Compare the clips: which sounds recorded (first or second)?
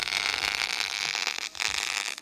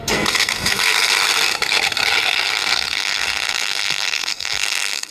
first